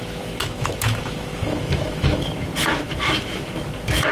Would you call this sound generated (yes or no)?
yes